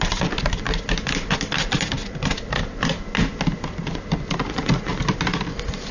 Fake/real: real